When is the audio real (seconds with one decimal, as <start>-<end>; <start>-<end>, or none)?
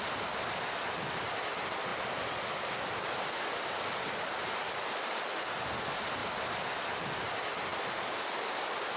0.0-9.0